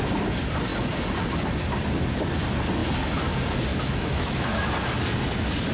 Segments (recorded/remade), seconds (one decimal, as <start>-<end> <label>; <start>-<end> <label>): 0.0-3.7 recorded; 3.7-4.7 remade; 4.7-5.7 recorded